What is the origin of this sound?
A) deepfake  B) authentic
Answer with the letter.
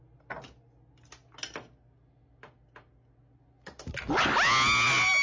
B